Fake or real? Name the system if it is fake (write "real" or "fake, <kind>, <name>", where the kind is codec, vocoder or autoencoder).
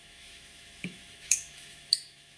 fake, autoencoder, DAC-VAE